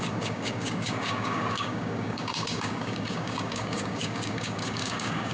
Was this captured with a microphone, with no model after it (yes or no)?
no